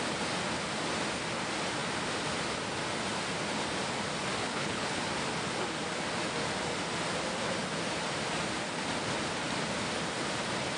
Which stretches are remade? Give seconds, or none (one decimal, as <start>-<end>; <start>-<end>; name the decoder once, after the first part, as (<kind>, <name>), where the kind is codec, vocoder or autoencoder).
4.4-5.0 (codec, HILCodec)